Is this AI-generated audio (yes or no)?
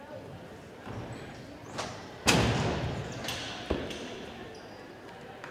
no